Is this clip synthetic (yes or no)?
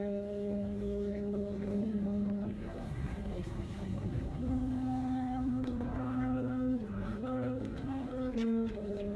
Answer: yes